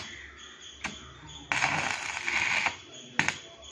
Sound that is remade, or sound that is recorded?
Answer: recorded